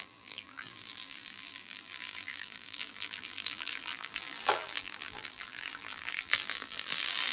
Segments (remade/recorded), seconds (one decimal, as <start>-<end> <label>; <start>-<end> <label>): 0.0-7.3 remade